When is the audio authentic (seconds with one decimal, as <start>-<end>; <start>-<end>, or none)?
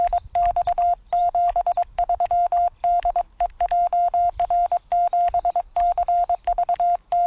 0.0-7.3